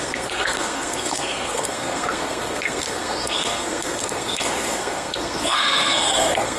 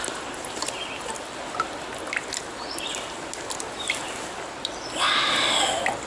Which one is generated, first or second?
first